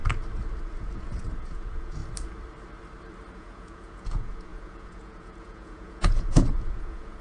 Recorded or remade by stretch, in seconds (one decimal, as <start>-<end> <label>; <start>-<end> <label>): 0.0-0.6 recorded; 0.6-2.0 remade; 2.0-3.3 recorded; 3.3-7.2 remade